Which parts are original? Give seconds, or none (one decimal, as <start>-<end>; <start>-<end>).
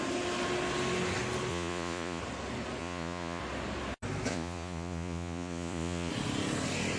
0.0-1.5; 2.2-2.8; 3.4-4.3; 6.1-7.0